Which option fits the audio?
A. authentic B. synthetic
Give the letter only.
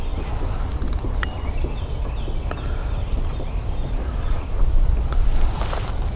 A